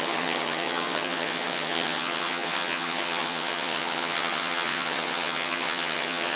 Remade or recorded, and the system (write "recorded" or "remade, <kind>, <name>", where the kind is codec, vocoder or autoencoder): remade, vocoder, HiFi-GAN